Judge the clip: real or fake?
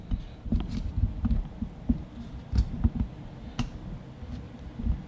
real